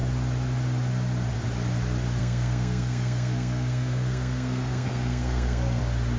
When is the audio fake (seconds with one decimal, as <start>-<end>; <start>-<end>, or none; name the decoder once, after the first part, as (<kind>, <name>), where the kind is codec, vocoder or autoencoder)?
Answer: 2.2-5.8 (codec, SNAC)